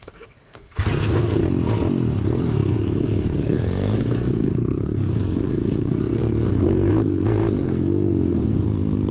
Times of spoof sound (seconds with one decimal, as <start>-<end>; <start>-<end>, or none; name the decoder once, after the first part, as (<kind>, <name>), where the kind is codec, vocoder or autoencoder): 0.0-1.4 (codec, SNAC); 2.2-9.1